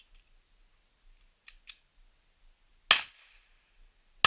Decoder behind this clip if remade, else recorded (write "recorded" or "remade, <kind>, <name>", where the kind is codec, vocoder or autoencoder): recorded